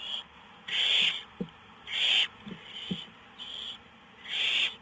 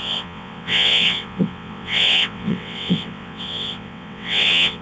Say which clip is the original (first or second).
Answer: first